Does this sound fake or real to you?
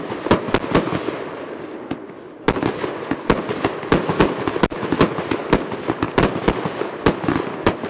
real